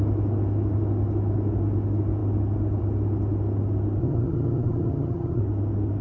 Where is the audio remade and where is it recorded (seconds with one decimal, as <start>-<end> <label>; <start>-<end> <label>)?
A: 0.0-4.0 recorded; 4.0-5.4 remade; 5.4-6.0 recorded